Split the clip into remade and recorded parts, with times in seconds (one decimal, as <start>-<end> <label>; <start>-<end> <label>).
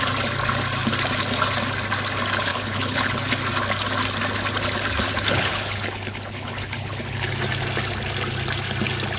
0.0-2.5 recorded; 2.5-3.3 remade; 3.3-5.1 recorded; 5.1-7.3 remade; 7.3-9.2 recorded